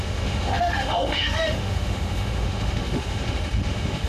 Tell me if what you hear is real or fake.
fake